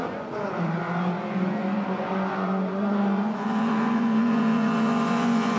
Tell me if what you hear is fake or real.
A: fake